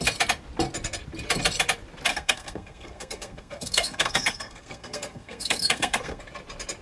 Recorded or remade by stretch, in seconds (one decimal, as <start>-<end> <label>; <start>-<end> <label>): 0.0-2.1 recorded; 2.1-6.2 remade; 6.2-6.8 recorded